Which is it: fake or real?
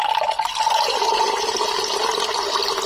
real